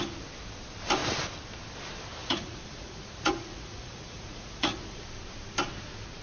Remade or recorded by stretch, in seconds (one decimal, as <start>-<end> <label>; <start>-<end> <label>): 0.0-2.2 recorded; 2.2-5.0 remade; 5.0-6.2 recorded